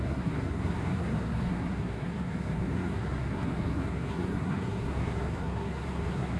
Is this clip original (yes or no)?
no